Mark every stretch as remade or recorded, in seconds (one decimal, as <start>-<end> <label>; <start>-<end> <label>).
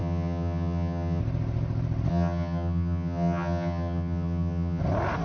0.0-1.2 remade; 1.2-2.1 recorded; 2.1-4.8 remade; 4.8-5.2 recorded